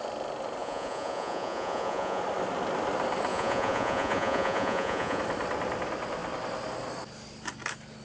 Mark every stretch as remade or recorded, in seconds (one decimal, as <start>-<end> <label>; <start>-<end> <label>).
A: 0.0-0.6 recorded; 0.6-2.2 remade; 2.2-3.3 recorded; 3.3-5.2 remade; 5.2-8.0 recorded